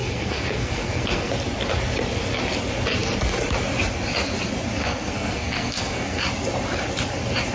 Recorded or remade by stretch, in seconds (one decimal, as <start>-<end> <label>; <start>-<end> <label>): 0.0-1.3 remade; 1.3-4.8 recorded; 4.8-6.2 remade; 6.2-7.5 recorded